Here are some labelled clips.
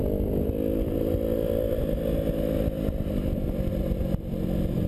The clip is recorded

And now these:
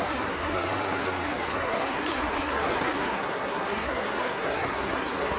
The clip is remade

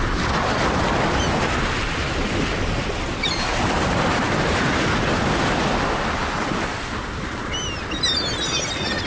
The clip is recorded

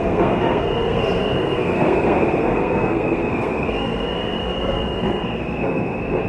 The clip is remade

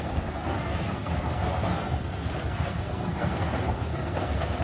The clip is remade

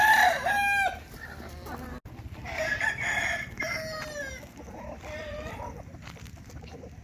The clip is recorded